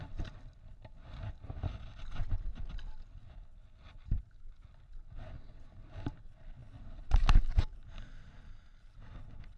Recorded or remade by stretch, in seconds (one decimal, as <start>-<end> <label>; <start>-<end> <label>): 0.0-9.6 recorded